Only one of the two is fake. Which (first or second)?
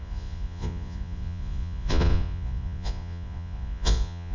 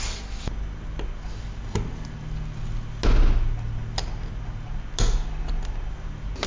first